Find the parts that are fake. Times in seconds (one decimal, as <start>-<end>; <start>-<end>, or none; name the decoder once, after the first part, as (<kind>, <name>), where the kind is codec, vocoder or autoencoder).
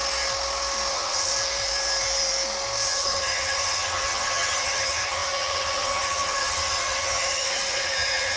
0.9-1.3 (vocoder, HiFi-GAN); 2.9-8.4